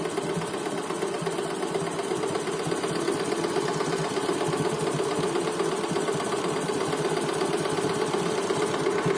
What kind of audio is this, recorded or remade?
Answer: recorded